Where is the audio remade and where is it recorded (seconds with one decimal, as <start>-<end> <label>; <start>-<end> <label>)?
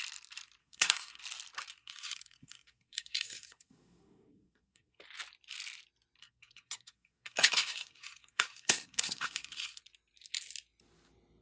0.0-0.6 recorded; 0.6-1.2 remade; 1.2-1.8 recorded; 1.8-5.0 remade; 5.0-6.2 recorded; 6.2-9.8 remade; 9.8-11.4 recorded